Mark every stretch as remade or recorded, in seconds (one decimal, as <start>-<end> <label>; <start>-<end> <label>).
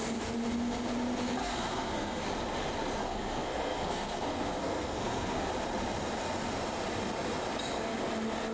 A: 0.0-1.4 recorded; 1.4-2.2 remade; 2.2-3.0 recorded; 3.0-5.5 remade; 5.5-8.5 recorded